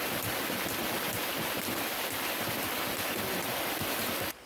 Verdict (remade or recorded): recorded